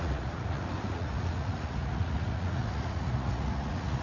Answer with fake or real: fake